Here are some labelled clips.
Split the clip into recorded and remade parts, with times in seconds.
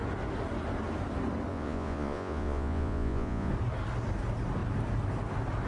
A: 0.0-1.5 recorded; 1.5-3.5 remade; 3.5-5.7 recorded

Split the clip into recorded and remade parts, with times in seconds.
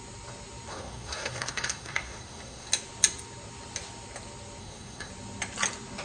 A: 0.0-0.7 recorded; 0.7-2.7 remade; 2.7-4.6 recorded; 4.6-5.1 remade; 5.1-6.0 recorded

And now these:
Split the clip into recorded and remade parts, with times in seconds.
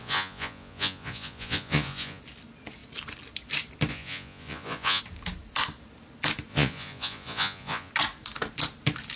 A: 0.0-2.2 remade; 2.2-3.9 recorded; 3.9-5.0 remade; 5.0-6.5 recorded; 6.5-7.9 remade; 7.9-9.2 recorded